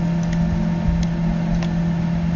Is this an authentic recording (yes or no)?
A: yes